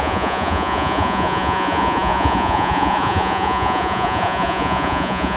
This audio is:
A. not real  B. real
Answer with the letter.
A